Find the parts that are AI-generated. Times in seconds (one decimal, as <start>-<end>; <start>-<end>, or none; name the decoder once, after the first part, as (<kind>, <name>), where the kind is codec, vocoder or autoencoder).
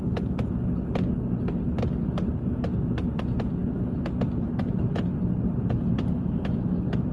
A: none